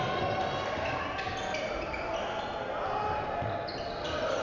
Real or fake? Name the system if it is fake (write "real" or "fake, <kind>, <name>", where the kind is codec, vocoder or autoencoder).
real